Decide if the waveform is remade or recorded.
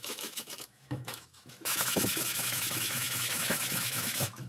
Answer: remade